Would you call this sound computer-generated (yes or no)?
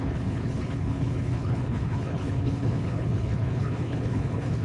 yes